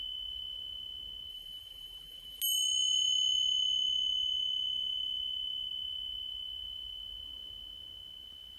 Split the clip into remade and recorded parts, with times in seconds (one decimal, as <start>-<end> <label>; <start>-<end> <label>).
0.0-1.3 recorded; 1.3-2.4 remade; 2.4-8.6 recorded

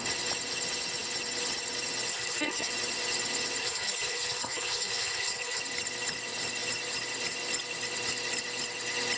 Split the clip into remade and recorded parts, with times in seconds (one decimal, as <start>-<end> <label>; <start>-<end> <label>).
0.0-2.1 recorded; 2.1-2.7 remade; 2.7-3.6 recorded; 3.6-5.6 remade; 5.6-9.2 recorded

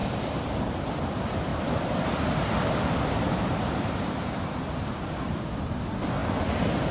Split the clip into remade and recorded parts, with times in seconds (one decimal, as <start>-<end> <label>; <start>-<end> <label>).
0.0-1.5 remade; 1.5-3.2 recorded; 3.2-6.9 remade

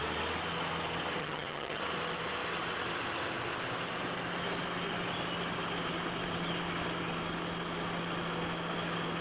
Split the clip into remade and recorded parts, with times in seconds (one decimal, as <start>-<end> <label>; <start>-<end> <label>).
0.0-1.2 recorded; 1.2-1.8 remade; 1.8-9.2 recorded